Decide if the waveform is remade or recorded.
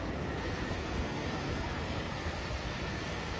remade